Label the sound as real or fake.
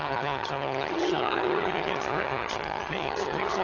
fake